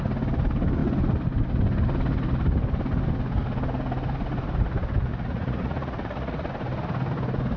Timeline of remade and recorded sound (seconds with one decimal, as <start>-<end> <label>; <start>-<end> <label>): 0.0-5.1 recorded; 5.1-6.5 remade; 6.5-7.6 recorded